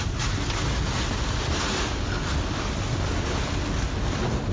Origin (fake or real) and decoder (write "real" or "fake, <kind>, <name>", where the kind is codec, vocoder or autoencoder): real